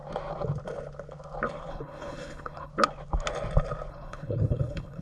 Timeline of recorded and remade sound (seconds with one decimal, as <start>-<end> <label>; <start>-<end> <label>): 0.0-1.7 recorded; 1.7-2.7 remade; 2.7-3.9 recorded; 3.9-5.0 remade